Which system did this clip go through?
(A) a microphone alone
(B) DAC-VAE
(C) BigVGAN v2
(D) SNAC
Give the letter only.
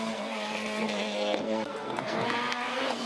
D